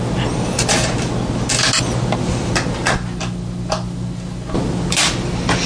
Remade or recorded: recorded